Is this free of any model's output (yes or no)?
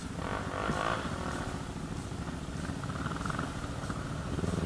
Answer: yes